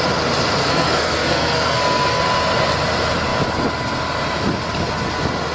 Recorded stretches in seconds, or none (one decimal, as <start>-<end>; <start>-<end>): 0.0-0.6; 2.2-5.5